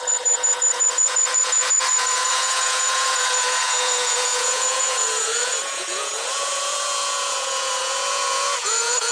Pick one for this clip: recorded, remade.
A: remade